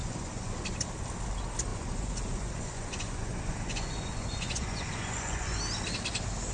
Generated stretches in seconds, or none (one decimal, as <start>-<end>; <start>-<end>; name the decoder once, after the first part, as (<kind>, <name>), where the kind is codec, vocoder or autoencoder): 0.0-0.6 (vocoder, Vocos); 1.7-5.6